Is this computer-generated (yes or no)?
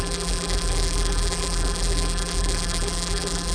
yes